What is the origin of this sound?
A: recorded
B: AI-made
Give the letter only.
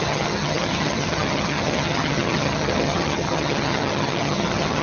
B